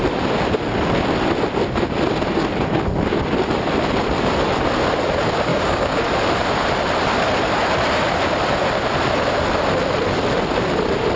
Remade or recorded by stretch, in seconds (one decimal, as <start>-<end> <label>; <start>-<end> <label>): 0.0-5.5 recorded; 5.5-6.1 remade; 6.1-11.2 recorded